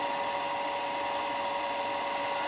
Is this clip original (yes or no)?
yes